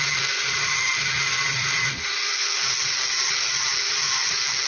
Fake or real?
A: real